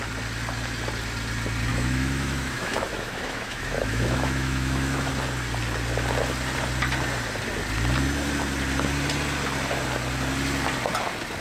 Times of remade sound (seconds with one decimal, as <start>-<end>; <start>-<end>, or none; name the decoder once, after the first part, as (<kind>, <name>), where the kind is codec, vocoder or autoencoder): 1.7-5.1 (autoencoder, DAC-VAE)